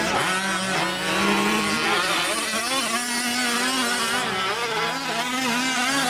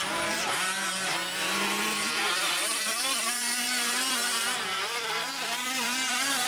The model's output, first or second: second